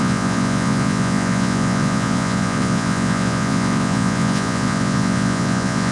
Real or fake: fake